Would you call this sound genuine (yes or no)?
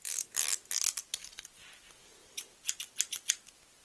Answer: yes